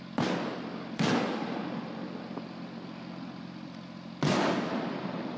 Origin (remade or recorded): recorded